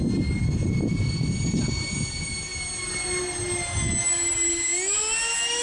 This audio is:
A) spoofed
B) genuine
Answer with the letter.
B